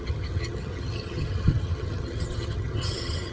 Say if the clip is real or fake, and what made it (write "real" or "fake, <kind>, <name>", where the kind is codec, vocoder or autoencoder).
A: fake, vocoder, HiFi-GAN